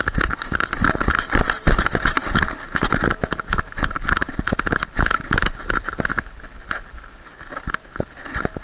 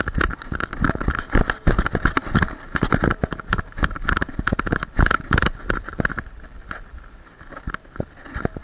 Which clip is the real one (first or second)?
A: first